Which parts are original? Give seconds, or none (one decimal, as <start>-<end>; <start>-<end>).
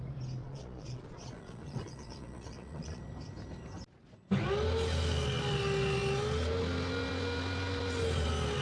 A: 0.0-0.4; 3.0-8.6